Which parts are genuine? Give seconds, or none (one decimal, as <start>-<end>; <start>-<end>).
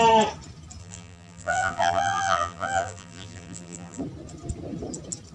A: 0.0-0.8; 4.0-5.3